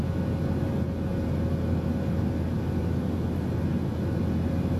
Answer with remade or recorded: recorded